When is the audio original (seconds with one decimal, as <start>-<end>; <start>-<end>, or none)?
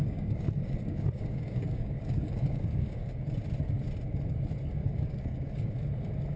3.2-4.8; 5.7-6.4